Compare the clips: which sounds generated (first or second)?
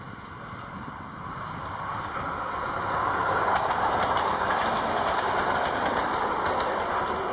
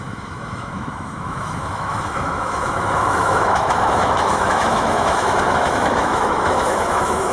second